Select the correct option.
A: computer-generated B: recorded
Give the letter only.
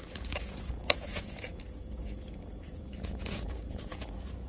A